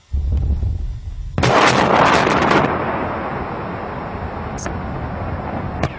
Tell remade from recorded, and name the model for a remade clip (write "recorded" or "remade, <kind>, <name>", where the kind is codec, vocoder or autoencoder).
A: recorded